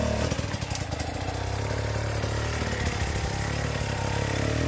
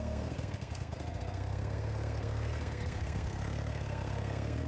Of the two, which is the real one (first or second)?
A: first